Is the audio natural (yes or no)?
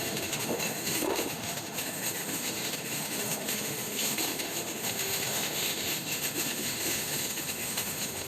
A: no